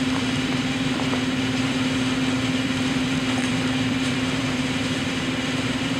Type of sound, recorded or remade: remade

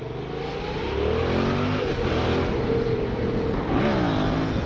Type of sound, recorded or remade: recorded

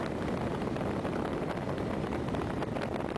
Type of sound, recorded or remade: recorded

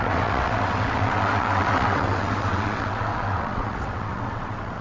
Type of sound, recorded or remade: remade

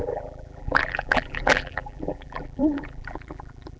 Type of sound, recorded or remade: remade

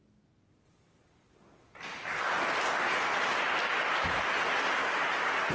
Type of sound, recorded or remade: recorded